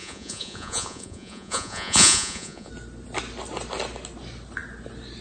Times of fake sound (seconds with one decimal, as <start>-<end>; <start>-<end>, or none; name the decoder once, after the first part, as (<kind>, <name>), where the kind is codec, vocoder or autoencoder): 0.0-2.7 (vocoder, Vocos)